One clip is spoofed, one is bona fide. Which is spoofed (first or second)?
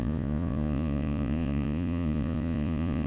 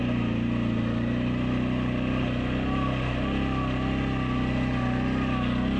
first